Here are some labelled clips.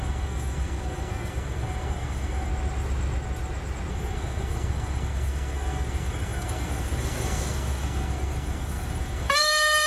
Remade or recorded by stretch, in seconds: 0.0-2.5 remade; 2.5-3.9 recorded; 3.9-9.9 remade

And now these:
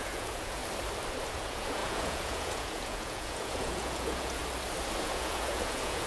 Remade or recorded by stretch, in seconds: 0.0-0.6 remade; 0.6-1.3 recorded; 1.3-4.4 remade; 4.4-5.0 recorded; 5.0-6.1 remade

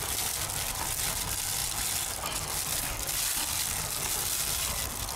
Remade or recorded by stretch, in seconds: 0.0-5.2 recorded

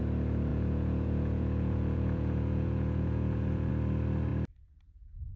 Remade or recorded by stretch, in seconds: 0.0-0.5 recorded; 0.5-3.7 remade; 3.7-5.4 recorded

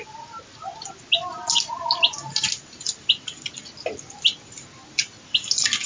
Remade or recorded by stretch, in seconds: 0.0-5.9 recorded

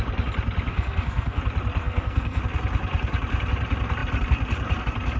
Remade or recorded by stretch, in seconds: 0.0-0.7 recorded; 0.7-1.4 remade; 1.4-1.8 recorded; 1.8-2.4 remade; 2.4-5.2 recorded